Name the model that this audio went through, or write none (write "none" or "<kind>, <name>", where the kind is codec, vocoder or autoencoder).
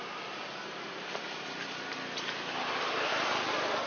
none